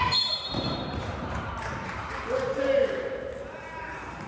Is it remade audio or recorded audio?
remade